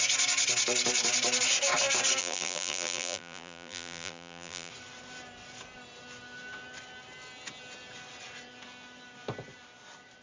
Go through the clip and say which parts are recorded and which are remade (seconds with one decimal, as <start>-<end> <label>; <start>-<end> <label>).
0.0-2.2 recorded; 2.2-4.7 remade; 4.7-10.2 recorded